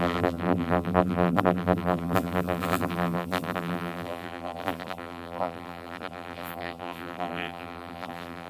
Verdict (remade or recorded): remade